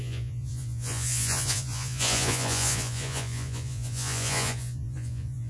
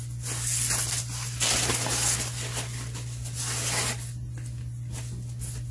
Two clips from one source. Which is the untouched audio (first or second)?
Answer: second